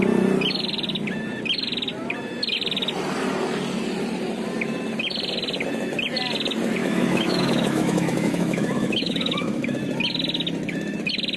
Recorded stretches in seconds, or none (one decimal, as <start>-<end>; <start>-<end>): 0.0-6.8; 9.8-11.4